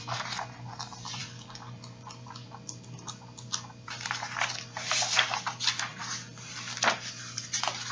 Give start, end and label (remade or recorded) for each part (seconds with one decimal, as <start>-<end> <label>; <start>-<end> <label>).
0.0-7.9 recorded